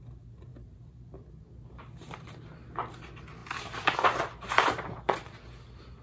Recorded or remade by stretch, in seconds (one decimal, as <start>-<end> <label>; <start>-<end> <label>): 0.0-6.0 recorded